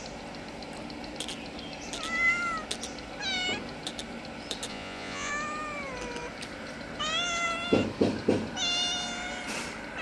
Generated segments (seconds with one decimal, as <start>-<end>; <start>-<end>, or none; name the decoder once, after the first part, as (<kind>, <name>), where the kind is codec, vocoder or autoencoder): 4.7-5.3 (vocoder, Vocos)